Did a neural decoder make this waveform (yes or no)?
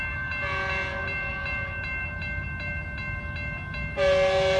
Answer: no